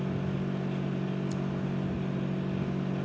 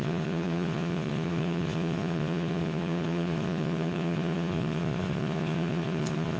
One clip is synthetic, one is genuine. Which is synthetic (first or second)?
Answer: second